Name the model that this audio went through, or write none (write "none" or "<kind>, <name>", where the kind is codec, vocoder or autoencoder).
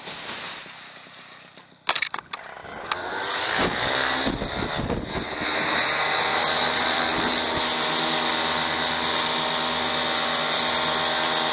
none